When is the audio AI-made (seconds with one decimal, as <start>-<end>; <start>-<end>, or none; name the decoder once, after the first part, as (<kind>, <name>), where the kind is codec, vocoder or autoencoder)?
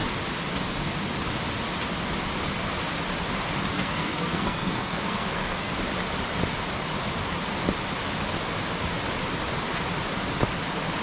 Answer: 3.7-5.7 (codec, SNAC)